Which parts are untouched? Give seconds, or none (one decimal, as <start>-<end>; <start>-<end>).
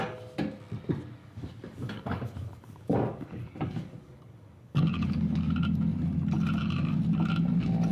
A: 0.0-1.2; 5.5-7.9